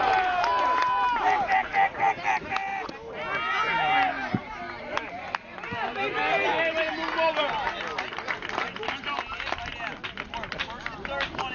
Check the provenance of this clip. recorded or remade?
recorded